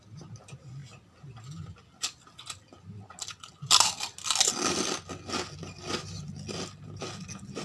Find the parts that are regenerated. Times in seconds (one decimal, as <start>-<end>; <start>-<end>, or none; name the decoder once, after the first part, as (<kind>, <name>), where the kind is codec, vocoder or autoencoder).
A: none